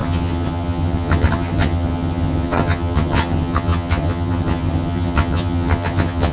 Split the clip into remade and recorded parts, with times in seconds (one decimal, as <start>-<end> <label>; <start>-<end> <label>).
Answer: 0.0-6.3 remade